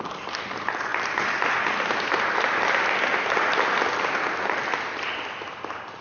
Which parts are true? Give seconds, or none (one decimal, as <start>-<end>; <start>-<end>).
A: 0.0-6.0